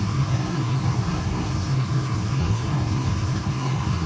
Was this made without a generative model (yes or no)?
no